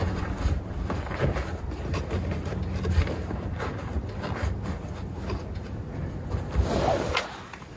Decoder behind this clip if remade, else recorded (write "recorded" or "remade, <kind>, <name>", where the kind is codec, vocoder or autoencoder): recorded